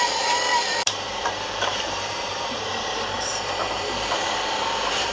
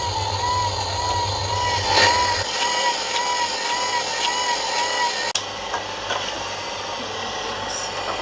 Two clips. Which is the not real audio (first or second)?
first